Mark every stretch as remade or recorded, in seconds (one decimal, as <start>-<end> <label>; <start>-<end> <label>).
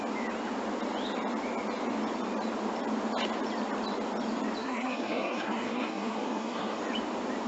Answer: 0.0-4.6 recorded; 4.6-6.8 remade; 6.8-7.5 recorded